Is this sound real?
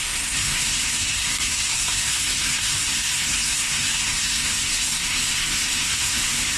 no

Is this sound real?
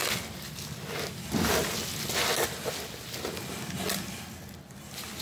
yes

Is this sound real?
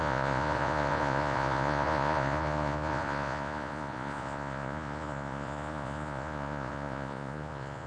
no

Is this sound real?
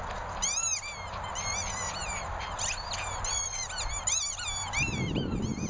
yes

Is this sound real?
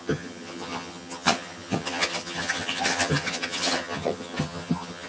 no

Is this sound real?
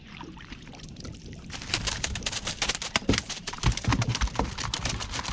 no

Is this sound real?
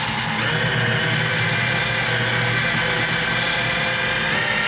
yes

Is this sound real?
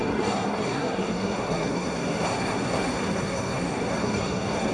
no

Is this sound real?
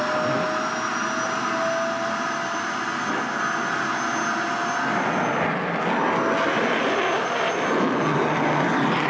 yes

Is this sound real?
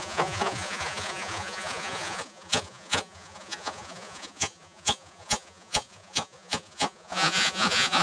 no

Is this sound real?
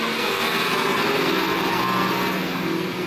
no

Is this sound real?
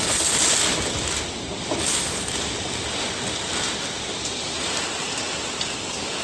yes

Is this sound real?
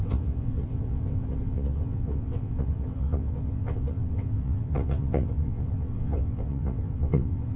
no